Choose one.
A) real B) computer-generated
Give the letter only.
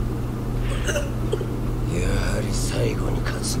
A